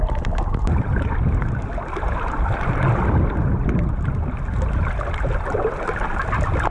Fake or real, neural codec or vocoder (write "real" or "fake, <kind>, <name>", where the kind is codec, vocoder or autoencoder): real